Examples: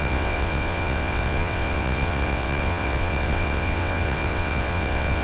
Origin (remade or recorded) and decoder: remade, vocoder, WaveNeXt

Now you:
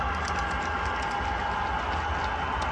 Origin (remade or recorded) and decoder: recorded